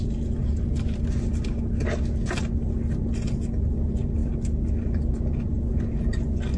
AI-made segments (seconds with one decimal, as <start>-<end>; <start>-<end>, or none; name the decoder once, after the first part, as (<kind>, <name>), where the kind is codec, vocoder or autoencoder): none